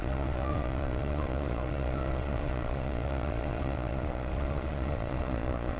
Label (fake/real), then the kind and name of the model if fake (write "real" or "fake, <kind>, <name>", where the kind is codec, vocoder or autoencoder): fake, vocoder, Vocos